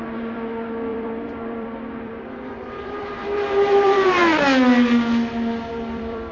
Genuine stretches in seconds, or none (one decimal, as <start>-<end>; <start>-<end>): 4.2-5.7